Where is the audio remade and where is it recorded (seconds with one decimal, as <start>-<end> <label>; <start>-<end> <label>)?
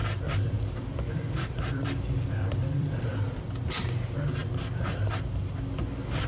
0.0-3.7 remade; 3.7-6.3 recorded